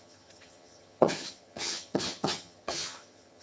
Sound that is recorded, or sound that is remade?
remade